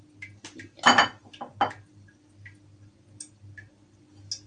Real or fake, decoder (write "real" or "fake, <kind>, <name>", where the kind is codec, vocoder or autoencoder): real